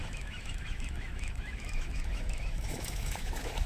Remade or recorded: remade